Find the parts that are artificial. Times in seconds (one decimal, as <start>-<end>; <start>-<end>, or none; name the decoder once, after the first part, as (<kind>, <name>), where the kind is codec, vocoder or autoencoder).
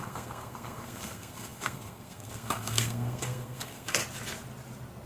0.0-4.0 (codec, SNAC)